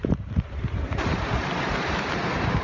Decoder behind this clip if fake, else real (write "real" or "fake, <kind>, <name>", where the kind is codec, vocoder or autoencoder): fake, vocoder, BigVGAN v2